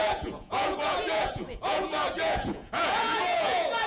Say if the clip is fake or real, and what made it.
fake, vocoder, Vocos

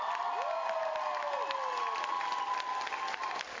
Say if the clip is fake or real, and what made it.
real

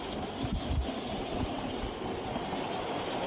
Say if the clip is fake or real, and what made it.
real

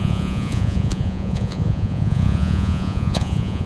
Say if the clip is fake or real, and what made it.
fake, vocoder, Vocos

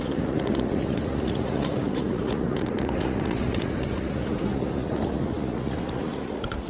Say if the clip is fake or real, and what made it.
fake, vocoder, Vocos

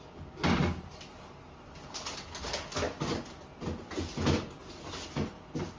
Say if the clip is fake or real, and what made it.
real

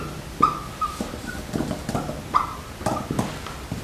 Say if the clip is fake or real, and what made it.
real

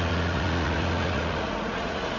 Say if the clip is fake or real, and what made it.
fake, vocoder, Vocos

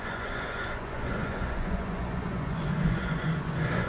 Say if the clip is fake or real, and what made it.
fake, vocoder, Vocos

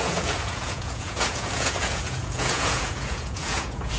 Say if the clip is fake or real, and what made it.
fake, vocoder, Vocos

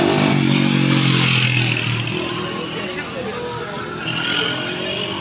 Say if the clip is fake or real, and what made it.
real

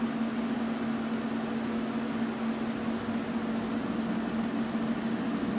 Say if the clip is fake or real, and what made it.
real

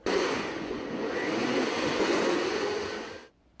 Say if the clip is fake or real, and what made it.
fake, vocoder, Vocos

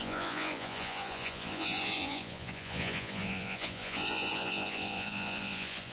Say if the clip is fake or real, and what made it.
fake, vocoder, Vocos